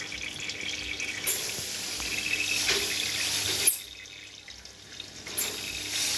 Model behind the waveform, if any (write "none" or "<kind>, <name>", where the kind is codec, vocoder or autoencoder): none